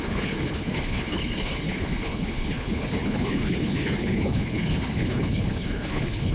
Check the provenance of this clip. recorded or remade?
remade